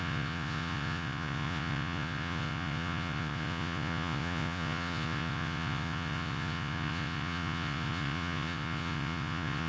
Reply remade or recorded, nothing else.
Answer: remade